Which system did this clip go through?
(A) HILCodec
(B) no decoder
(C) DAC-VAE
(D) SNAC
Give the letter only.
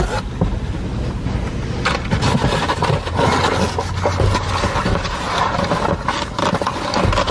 B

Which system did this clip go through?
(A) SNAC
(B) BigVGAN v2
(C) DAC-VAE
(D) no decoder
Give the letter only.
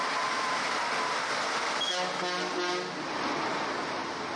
D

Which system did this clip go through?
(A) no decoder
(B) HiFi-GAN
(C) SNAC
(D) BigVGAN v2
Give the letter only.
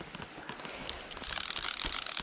A